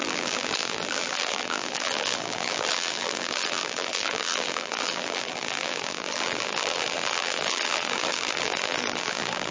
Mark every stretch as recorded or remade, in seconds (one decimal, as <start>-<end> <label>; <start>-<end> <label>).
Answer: 0.0-9.5 remade